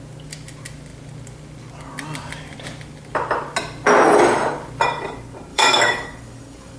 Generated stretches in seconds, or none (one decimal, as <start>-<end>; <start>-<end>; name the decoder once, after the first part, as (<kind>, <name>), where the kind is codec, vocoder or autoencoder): 5.5-6.8 (codec, DAC)